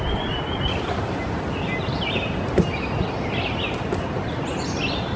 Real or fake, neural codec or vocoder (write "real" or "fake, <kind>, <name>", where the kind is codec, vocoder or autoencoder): real